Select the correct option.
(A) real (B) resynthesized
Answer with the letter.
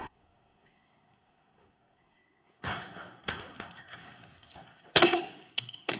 B